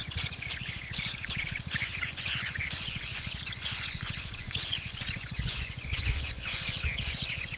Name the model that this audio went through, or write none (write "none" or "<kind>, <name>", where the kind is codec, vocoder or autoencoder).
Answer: vocoder, Vocos